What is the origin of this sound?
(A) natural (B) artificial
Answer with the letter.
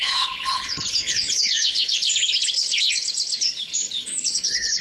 B